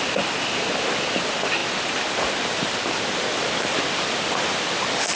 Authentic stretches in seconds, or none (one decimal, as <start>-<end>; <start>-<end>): 0.0-5.2